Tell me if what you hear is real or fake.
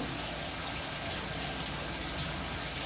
real